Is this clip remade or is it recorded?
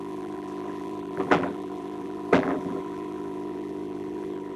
remade